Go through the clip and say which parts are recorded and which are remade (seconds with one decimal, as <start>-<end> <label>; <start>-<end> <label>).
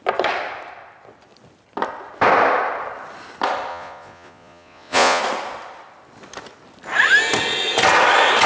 0.0-3.7 recorded; 3.7-5.2 remade; 5.2-8.5 recorded